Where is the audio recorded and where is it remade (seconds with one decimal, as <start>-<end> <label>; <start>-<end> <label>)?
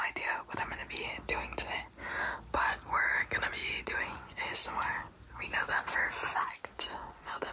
0.0-0.8 remade; 0.8-3.5 recorded; 3.5-4.6 remade; 4.6-6.4 recorded; 6.4-7.5 remade